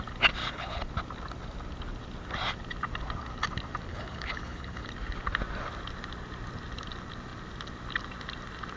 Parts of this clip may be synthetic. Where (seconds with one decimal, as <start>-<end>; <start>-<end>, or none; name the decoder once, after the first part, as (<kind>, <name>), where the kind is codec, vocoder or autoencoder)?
0.4-0.9 (codec, HILCodec); 3.9-4.9